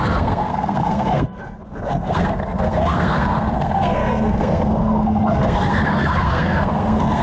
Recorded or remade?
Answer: remade